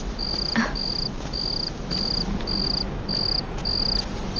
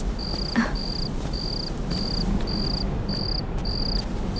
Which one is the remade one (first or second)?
second